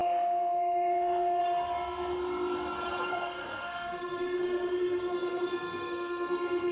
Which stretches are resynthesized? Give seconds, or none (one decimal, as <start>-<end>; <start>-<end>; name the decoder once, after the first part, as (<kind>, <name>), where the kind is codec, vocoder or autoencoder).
0.0-1.4 (codec, SNAC); 3.1-6.7